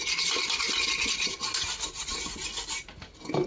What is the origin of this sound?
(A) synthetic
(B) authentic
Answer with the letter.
B